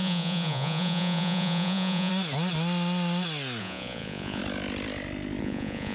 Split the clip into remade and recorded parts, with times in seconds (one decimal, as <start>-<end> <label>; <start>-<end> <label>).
0.0-2.1 remade; 2.1-3.6 recorded; 3.6-4.4 remade; 4.4-5.4 recorded; 5.4-5.9 remade